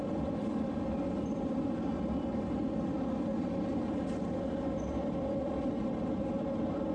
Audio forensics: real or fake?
fake